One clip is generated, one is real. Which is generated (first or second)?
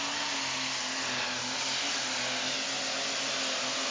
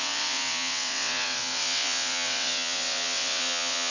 second